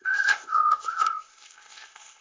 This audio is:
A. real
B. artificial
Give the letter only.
B